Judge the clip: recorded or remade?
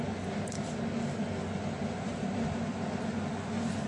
recorded